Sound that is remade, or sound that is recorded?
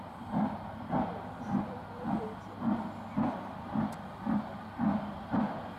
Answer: recorded